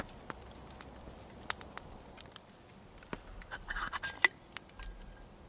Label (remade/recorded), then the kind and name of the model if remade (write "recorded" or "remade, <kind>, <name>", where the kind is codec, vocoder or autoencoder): recorded